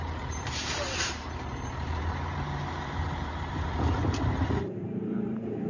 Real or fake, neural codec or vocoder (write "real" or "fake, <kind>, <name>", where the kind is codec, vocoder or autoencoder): fake, vocoder, BigVGAN v2